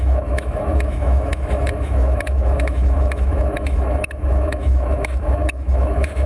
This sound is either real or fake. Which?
fake